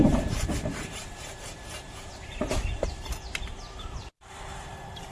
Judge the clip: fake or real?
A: fake